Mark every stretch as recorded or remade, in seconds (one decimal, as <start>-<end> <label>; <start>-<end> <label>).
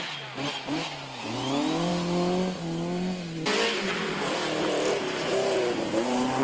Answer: 0.0-6.4 recorded